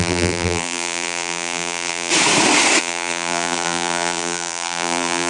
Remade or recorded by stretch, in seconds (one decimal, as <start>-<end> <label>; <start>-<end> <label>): 0.0-2.1 remade; 2.1-2.8 recorded; 2.8-5.3 remade